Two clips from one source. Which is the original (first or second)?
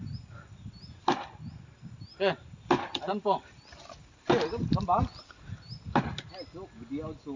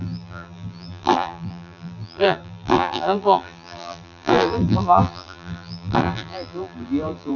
first